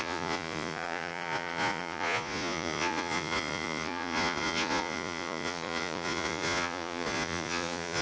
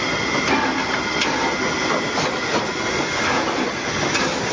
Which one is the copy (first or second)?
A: first